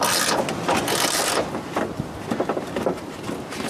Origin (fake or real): real